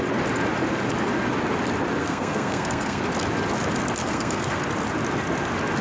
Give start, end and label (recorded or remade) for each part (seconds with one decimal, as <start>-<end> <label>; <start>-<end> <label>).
0.0-2.0 recorded; 2.0-3.0 remade; 3.0-4.0 recorded; 4.0-4.6 remade; 4.6-5.8 recorded